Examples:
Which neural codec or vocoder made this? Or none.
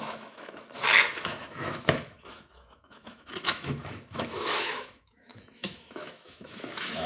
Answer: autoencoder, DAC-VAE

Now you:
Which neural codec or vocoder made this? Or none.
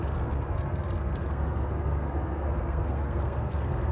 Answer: codec, SNAC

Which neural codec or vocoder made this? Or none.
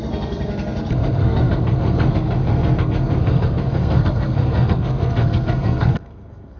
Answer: codec, SNAC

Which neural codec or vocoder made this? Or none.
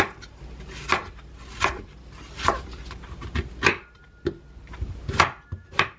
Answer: vocoder, BigVGAN v2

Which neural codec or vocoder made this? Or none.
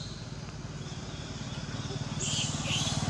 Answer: none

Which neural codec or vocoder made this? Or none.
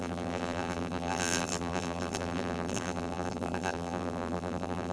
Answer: vocoder, BigVGAN v2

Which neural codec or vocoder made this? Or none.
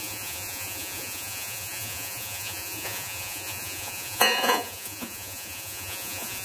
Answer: vocoder, Vocos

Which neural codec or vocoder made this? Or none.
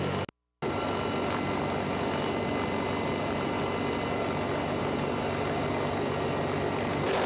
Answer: none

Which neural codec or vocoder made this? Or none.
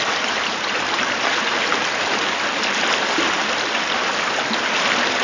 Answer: none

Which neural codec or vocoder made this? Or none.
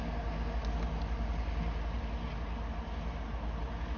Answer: none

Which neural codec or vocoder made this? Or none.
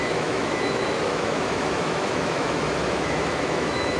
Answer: autoencoder, DAC-VAE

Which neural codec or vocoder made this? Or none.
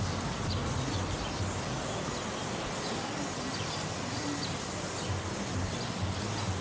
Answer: none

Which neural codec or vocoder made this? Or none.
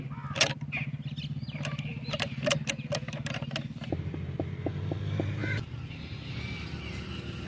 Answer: none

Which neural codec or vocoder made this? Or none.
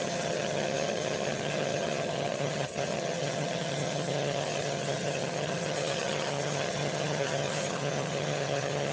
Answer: vocoder, HiFi-GAN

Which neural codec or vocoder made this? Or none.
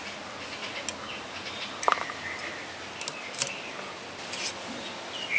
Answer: none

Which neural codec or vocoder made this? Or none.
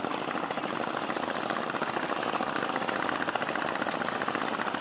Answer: none